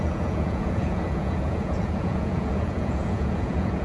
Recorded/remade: remade